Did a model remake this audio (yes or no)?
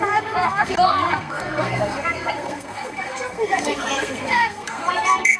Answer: yes